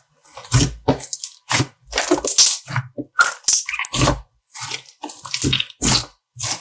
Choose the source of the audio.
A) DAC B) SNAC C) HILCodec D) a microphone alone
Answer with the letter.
D